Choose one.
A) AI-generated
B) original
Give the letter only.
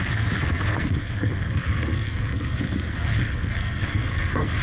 A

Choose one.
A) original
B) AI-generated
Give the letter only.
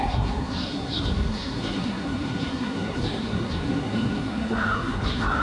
B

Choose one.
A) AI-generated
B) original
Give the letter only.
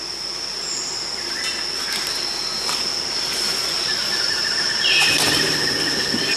B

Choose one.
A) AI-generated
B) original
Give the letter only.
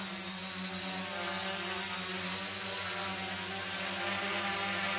B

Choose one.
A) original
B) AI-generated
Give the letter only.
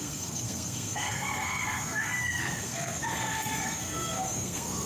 B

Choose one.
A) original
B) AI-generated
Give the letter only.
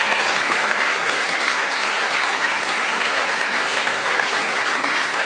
B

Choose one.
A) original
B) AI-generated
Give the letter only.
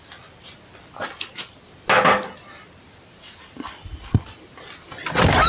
A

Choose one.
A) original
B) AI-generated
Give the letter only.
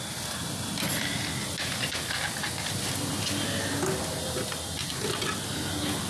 A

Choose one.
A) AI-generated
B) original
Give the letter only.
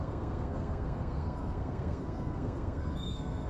A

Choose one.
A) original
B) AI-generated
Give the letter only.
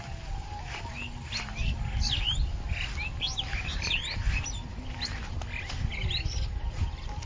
A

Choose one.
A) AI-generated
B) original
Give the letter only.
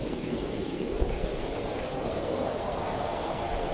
A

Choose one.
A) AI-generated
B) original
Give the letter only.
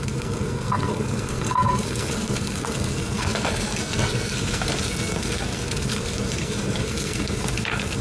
A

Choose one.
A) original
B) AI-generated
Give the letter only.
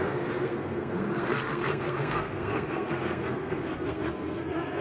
B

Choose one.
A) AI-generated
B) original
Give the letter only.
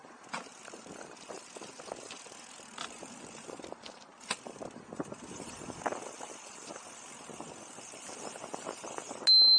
B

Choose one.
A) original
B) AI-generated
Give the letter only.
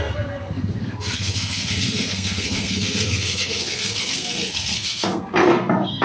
B